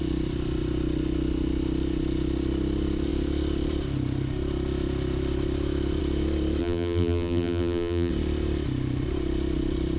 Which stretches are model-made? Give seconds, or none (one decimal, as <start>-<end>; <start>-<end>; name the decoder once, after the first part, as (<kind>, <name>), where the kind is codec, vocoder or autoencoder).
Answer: 6.6-8.1 (vocoder, BigVGAN v2)